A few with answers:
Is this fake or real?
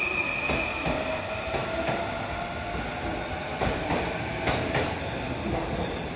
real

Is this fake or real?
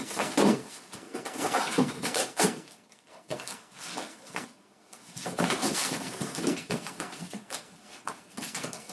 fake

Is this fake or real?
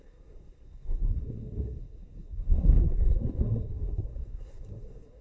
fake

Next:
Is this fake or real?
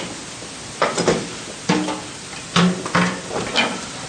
real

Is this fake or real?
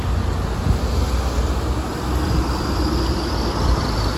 real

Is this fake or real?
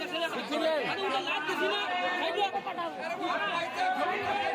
real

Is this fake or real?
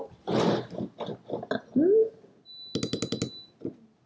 real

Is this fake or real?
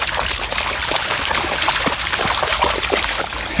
real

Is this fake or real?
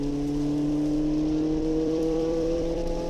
fake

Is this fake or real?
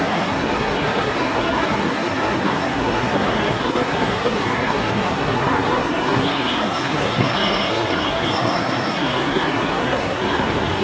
fake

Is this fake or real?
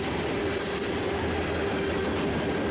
real